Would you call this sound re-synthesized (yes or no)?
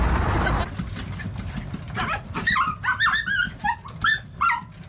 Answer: no